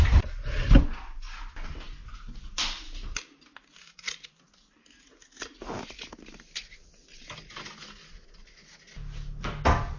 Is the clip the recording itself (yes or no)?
yes